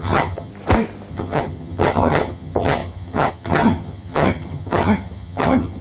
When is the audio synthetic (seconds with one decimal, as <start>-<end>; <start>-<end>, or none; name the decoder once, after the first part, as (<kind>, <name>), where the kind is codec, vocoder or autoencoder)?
0.0-0.5 (vocoder, HiFi-GAN); 1.1-5.8